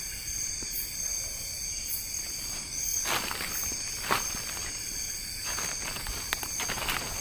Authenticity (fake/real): real